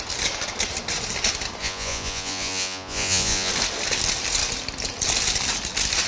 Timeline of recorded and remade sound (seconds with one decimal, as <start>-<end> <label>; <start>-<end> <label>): 0.0-1.6 recorded; 1.6-3.5 remade; 3.5-6.1 recorded